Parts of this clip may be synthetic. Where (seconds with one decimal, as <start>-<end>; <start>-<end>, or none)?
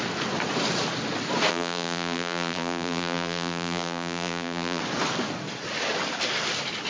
1.5-4.8